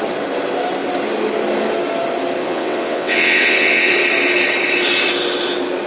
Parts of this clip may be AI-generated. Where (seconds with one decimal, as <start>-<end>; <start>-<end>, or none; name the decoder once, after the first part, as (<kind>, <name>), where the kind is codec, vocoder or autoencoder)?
2.4-3.9 (vocoder, WaveNeXt)